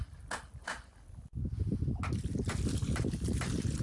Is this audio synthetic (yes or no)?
no